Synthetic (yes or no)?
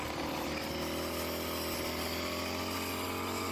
no